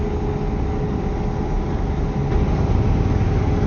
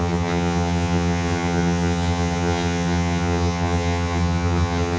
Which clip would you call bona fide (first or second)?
first